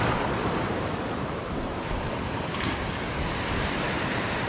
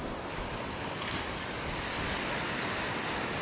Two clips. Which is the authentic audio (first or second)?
second